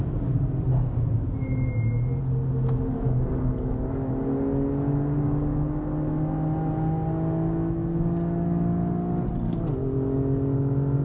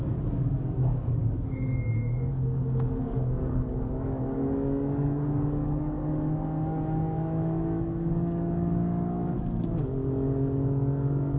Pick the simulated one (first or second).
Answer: second